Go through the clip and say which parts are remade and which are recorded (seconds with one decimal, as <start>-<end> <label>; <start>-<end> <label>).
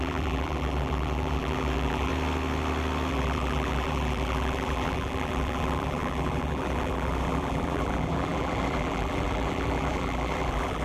0.0-2.1 remade; 2.1-3.1 recorded; 3.1-10.8 remade